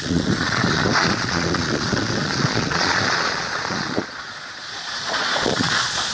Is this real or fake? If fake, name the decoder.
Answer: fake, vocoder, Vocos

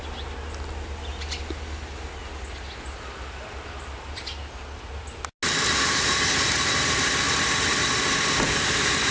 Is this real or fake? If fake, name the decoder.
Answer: real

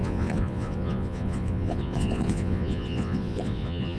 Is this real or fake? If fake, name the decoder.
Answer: fake, vocoder, Vocos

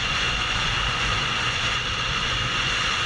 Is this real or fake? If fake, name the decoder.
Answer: fake, vocoder, Vocos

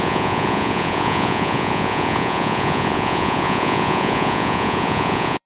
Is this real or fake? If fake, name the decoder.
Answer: fake, vocoder, Vocos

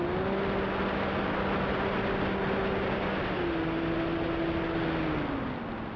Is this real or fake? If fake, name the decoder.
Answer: real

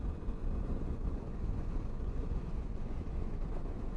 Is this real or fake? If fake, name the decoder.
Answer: fake, vocoder, Vocos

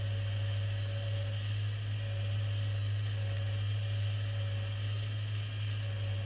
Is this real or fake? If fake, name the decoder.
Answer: real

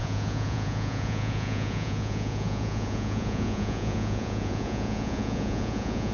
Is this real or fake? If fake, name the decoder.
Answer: fake, vocoder, Vocos